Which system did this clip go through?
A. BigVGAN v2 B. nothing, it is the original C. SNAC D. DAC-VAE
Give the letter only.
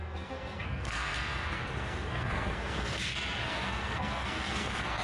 C